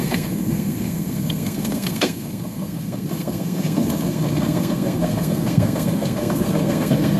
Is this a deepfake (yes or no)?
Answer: yes